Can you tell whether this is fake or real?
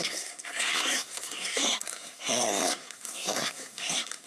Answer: fake